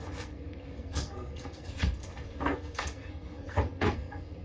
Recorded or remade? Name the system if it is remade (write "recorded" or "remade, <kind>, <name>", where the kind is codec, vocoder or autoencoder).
remade, codec, SNAC